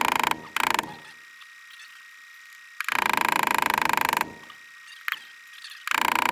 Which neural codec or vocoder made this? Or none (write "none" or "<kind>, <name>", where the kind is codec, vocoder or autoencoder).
none